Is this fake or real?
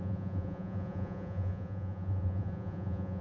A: fake